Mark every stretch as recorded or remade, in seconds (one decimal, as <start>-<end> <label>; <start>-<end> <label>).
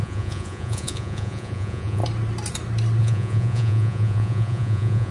0.0-2.0 remade; 2.0-3.0 recorded; 3.0-5.1 remade